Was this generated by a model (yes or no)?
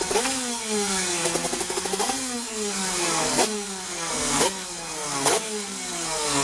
yes